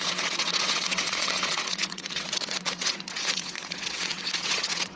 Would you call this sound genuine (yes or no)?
no